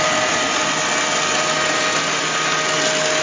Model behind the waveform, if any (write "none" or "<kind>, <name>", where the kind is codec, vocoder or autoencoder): none